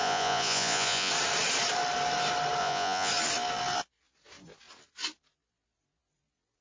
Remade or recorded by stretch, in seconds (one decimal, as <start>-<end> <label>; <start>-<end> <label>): 0.0-1.1 remade; 1.1-2.6 recorded; 2.6-3.1 remade; 3.1-6.6 recorded